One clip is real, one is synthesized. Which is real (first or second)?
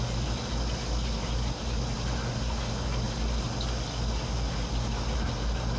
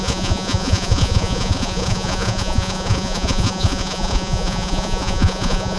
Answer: first